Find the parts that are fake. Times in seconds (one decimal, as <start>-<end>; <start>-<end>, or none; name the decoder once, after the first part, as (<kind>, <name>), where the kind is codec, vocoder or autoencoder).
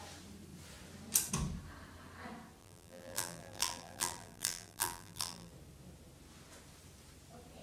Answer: 2.6-5.5 (vocoder, BigVGAN v2)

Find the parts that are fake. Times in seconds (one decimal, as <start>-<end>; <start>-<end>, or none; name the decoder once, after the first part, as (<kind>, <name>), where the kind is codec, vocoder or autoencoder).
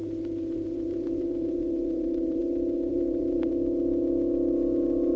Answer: 0.0-2.4 (vocoder, BigVGAN v2); 2.9-3.5